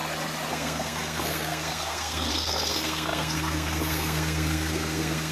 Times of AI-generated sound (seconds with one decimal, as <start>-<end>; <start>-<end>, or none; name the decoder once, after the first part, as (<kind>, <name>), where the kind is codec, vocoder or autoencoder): 0.5-5.3 (codec, SNAC)